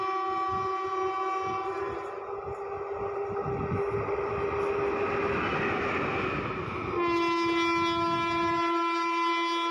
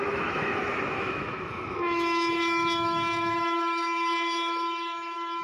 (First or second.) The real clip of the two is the first